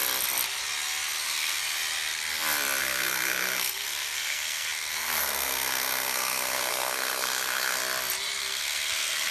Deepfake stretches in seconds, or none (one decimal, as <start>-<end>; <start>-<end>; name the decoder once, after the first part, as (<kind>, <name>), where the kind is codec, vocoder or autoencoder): 1.2-1.6 (codec, SNAC); 2.8-7.8; 8.4-9.3